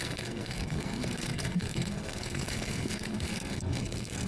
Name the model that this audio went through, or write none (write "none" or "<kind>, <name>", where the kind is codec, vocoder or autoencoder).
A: codec, SNAC